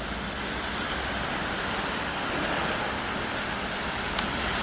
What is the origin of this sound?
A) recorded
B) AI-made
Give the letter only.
A